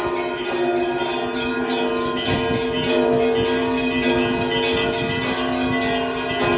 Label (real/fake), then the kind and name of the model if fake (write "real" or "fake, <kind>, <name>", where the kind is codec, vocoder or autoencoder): real